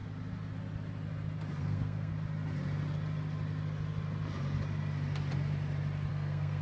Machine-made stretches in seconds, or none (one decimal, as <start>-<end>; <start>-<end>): 1.6-2.1; 6.1-6.6